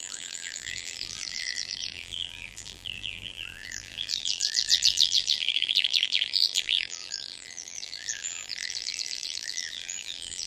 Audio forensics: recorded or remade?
remade